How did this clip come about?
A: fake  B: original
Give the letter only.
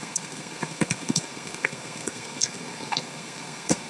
A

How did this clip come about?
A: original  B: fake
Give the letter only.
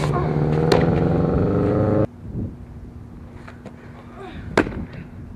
A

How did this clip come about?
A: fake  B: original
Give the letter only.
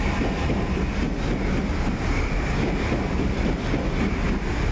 B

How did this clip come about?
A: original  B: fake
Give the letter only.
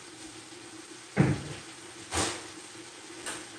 A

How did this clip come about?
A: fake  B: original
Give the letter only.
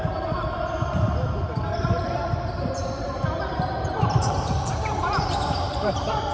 A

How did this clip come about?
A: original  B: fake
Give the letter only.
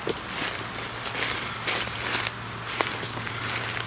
A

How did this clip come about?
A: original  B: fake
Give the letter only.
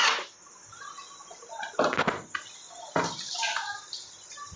A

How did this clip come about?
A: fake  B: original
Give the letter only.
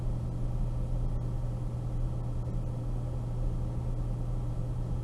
B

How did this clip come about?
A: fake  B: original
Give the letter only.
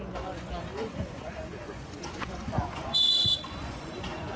A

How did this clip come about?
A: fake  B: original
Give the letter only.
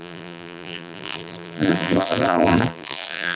A